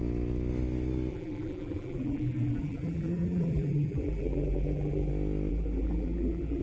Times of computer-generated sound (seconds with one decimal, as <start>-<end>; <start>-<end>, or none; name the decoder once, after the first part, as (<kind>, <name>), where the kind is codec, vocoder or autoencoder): 1.1-5.1 (vocoder, BigVGAN v2); 5.5-6.6